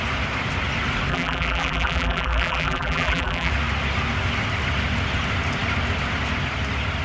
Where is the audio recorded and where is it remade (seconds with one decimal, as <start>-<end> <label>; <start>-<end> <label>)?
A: 0.0-1.1 recorded; 1.1-3.5 remade; 3.5-7.0 recorded